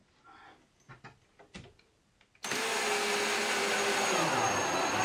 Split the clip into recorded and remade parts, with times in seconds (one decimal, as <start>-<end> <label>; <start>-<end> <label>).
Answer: 0.0-5.0 recorded